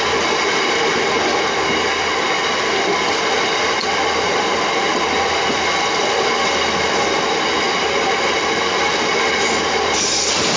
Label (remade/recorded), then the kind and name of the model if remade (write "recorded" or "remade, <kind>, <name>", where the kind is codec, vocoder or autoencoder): recorded